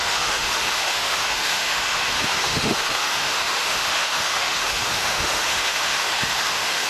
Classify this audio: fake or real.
fake